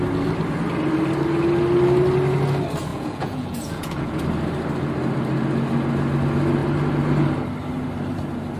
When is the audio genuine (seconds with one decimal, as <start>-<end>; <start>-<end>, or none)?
0.0-2.9; 4.2-8.6

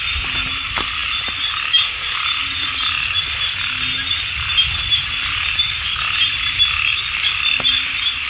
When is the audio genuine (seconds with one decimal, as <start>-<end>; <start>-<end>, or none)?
0.0-8.3

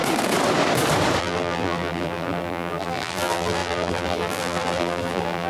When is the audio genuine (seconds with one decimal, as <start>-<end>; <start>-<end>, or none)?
0.0-1.2